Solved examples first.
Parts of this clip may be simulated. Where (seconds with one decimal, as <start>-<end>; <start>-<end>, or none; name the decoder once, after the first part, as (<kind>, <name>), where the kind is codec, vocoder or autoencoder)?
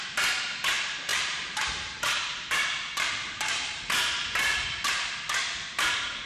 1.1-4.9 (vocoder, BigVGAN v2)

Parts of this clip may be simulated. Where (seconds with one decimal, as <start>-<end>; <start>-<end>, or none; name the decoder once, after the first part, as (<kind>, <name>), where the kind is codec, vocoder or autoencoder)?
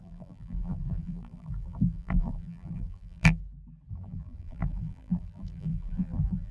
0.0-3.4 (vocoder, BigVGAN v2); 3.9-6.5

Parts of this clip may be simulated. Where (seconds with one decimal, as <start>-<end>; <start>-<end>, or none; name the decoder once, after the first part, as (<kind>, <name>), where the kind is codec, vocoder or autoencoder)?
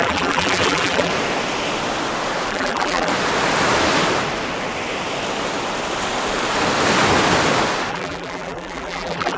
0.0-1.1 (vocoder, BigVGAN v2); 2.5-3.1; 7.9-9.4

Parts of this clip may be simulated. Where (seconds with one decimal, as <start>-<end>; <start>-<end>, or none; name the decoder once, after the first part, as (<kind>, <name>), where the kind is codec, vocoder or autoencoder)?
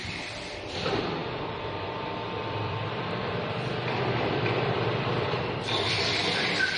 0.0-6.8 (vocoder, BigVGAN v2)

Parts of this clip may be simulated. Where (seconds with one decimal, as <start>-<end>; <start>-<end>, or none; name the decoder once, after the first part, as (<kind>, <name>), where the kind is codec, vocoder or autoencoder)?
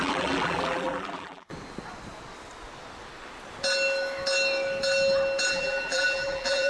0.0-1.5 (vocoder, BigVGAN v2); 5.5-6.7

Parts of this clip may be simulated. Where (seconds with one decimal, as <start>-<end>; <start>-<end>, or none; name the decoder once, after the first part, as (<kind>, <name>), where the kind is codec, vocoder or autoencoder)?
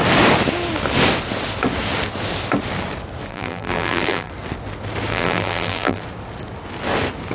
3.3-4.3 (vocoder, BigVGAN v2); 5.1-6.0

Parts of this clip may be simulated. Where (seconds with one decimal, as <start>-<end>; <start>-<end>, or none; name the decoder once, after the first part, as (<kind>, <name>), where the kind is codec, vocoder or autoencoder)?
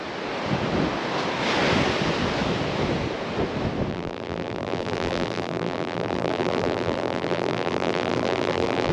3.9-8.9 (vocoder, BigVGAN v2)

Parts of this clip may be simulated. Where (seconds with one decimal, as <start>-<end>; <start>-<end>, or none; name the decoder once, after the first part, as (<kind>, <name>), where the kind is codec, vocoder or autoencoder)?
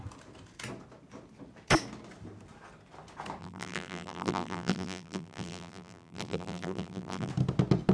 3.4-7.3 (vocoder, BigVGAN v2)